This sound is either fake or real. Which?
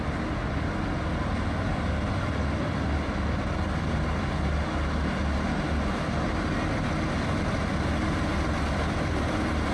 real